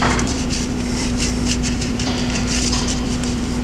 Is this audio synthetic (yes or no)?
yes